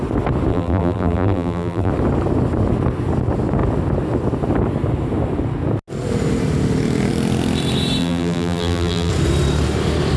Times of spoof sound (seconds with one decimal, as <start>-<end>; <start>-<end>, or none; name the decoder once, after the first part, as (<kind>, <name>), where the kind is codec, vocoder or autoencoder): 0.5-1.9 (vocoder, BigVGAN v2); 8.0-9.1